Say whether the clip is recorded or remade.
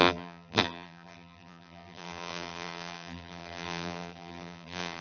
remade